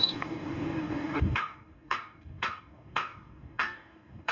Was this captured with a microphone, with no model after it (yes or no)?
no